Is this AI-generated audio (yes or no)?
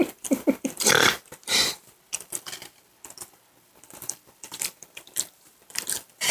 yes